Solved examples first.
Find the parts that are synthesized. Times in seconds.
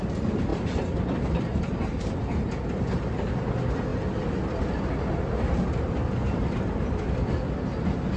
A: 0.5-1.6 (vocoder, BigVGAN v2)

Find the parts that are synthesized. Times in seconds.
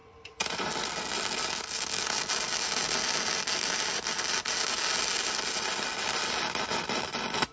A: 0.0-0.7 (vocoder, BigVGAN v2)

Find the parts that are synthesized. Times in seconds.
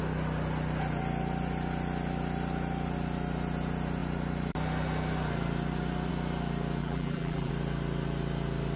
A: 6.8-7.5 (vocoder, BigVGAN v2)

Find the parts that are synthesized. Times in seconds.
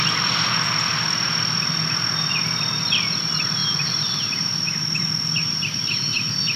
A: 3.6-4.8 (vocoder, BigVGAN v2); 5.4-6.6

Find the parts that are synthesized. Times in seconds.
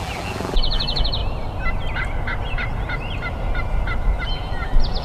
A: 0.0-1.2 (vocoder, BigVGAN v2); 4.2-5.0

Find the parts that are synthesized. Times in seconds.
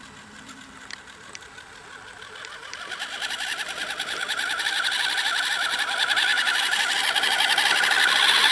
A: 6.3-6.9 (vocoder, BigVGAN v2)